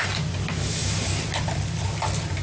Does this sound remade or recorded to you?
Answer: recorded